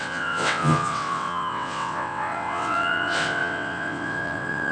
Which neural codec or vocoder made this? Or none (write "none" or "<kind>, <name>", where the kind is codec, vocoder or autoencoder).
vocoder, WaveNeXt